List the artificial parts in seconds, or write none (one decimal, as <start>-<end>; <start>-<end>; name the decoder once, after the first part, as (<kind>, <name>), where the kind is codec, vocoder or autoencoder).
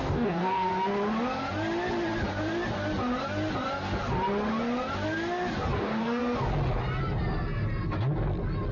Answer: 0.0-0.7 (codec, DAC); 5.8-6.2